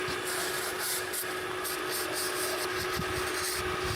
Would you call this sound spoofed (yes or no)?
no